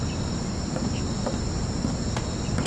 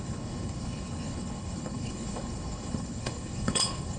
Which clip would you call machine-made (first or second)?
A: second